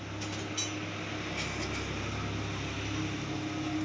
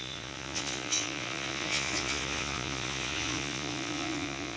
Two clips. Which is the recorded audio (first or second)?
first